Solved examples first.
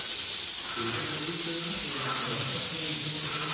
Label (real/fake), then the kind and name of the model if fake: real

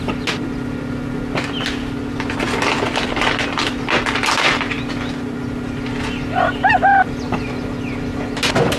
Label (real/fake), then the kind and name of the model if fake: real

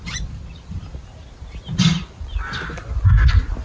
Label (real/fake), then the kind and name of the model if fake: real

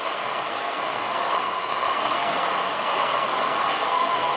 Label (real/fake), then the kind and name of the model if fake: fake, codec, SNAC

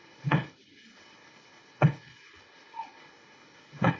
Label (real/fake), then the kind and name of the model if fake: fake, codec, HILCodec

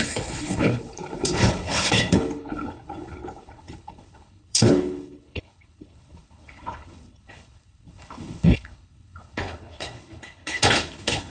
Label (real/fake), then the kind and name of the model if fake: fake, codec, HILCodec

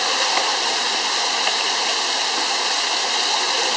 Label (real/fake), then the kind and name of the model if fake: real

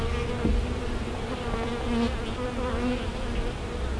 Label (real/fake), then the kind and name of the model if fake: real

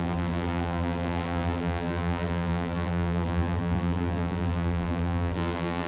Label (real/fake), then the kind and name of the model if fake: fake, vocoder, BigVGAN v2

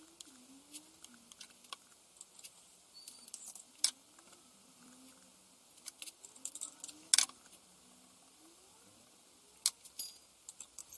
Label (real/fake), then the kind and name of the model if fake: real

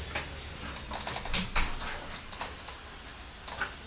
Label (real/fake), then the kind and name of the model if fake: real